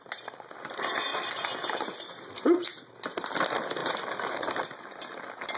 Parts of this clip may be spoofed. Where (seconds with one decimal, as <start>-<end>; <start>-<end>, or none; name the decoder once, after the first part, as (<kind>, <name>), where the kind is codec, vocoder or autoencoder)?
1.1-2.9 (vocoder, BigVGAN v2); 3.8-4.3